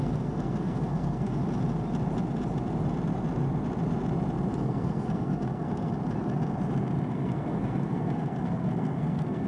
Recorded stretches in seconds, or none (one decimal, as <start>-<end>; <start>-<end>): 1.4-4.6; 5.9-7.1